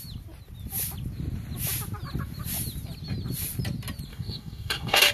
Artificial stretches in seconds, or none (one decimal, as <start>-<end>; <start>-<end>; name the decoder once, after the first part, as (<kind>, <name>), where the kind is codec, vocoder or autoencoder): 4.1-5.1 (codec, DAC)